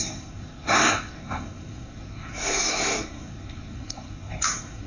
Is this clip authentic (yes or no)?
no